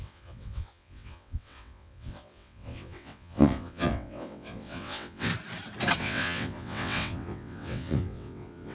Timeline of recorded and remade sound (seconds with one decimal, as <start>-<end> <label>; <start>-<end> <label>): 0.0-5.3 remade; 5.3-6.0 recorded; 6.0-8.7 remade